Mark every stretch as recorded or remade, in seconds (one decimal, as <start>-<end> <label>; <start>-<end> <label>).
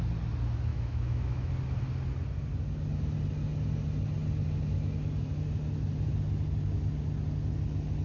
0.0-0.7 recorded; 0.7-1.5 remade; 1.5-8.0 recorded